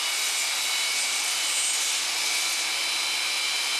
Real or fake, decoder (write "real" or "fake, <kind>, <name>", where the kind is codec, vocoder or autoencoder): real